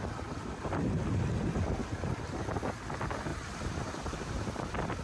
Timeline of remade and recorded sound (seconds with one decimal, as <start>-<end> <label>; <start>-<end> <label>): 0.0-1.8 recorded; 1.8-2.5 remade; 2.5-3.3 recorded; 3.3-4.6 remade; 4.6-5.0 recorded